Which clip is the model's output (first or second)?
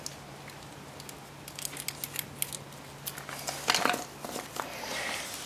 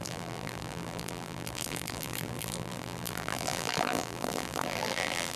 second